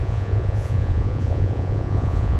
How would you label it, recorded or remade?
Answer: remade